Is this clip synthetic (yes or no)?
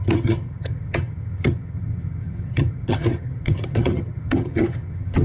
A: yes